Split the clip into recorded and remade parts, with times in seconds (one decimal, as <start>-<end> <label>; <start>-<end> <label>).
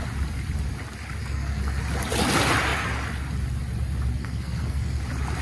0.0-1.2 recorded; 1.2-1.8 remade; 1.8-4.2 recorded; 4.2-5.0 remade; 5.0-5.4 recorded